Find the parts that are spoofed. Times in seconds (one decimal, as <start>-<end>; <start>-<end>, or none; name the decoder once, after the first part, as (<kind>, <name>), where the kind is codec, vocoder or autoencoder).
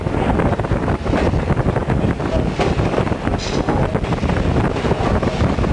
none